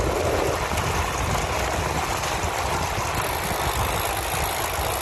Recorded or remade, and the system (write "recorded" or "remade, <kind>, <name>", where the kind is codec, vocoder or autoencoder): recorded